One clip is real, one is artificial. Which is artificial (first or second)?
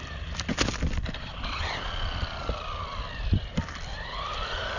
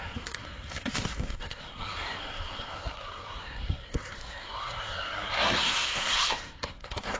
second